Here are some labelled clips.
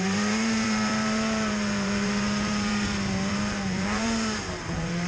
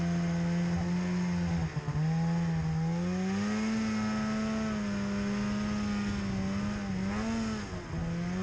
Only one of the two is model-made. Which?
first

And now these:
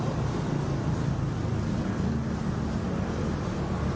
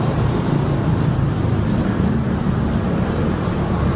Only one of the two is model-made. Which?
second